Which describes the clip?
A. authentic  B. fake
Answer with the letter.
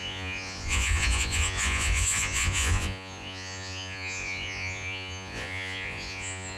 B